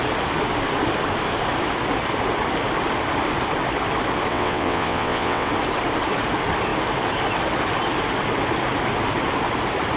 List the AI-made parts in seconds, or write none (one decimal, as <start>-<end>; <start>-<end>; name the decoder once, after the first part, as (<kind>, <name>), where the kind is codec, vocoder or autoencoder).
4.3-5.5 (vocoder, WaveNeXt)